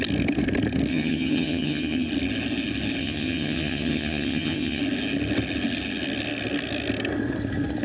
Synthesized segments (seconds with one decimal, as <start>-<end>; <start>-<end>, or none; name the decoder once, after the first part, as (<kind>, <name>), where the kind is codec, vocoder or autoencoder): 0.9-2.1 (vocoder, HiFi-GAN); 3.0-4.8